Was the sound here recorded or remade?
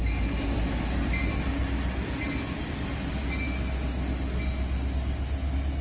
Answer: recorded